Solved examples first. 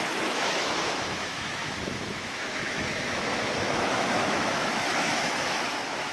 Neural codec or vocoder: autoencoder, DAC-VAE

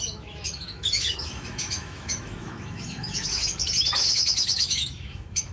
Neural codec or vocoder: autoencoder, DAC-VAE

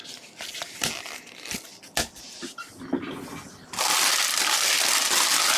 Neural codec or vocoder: none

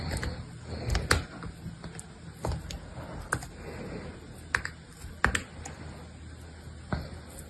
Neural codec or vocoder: none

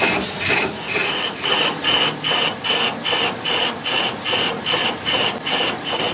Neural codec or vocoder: none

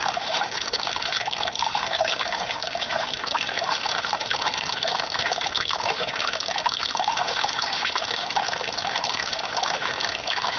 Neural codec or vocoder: autoencoder, DAC-VAE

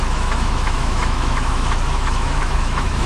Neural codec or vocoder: autoencoder, DAC-VAE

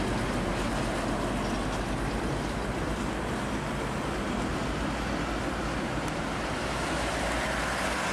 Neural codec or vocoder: none